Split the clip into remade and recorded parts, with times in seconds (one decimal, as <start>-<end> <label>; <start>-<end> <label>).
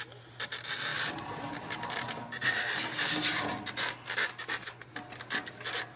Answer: 0.0-6.0 recorded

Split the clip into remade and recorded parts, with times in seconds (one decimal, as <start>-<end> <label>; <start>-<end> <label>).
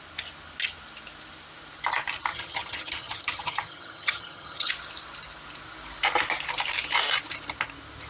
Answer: 0.0-2.3 recorded; 2.3-4.7 remade; 4.7-8.1 recorded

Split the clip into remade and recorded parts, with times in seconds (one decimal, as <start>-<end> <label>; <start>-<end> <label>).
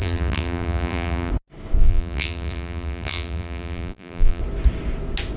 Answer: 0.0-1.3 remade; 1.3-1.8 recorded; 1.8-4.4 remade; 4.4-5.4 recorded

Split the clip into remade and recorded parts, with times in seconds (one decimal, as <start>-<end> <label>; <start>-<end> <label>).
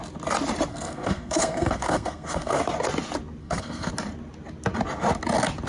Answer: 0.0-0.7 recorded; 0.7-2.6 remade; 2.6-3.4 recorded; 3.4-3.9 remade; 3.9-5.7 recorded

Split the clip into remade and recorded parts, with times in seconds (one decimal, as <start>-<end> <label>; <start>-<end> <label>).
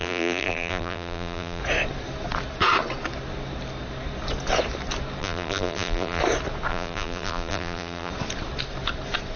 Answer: 0.0-1.6 remade; 1.6-5.2 recorded; 5.2-6.2 remade; 6.2-6.7 recorded; 6.7-8.1 remade; 8.1-9.4 recorded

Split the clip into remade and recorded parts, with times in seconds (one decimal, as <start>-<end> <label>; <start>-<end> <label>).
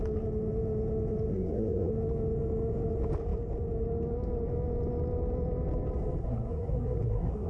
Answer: 0.0-1.3 recorded; 1.3-1.9 remade; 1.9-6.2 recorded; 6.2-7.5 remade